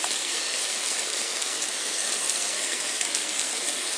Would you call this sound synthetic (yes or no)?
yes